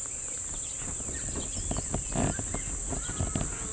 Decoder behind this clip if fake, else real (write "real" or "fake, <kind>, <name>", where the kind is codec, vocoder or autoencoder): real